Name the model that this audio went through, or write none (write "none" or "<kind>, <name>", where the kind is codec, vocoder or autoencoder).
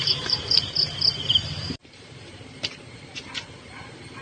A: vocoder, BigVGAN v2